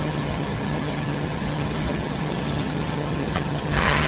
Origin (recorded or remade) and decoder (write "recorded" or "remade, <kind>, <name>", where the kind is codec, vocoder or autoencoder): remade, vocoder, HiFi-GAN